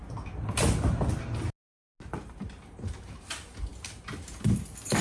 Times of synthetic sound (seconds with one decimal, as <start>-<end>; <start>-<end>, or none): 2.2-5.0